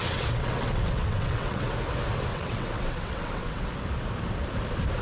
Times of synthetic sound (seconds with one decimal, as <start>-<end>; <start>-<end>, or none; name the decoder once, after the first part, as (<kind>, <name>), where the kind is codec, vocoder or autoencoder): 0.0-1.7 (vocoder, WaveNeXt); 2.3-3.7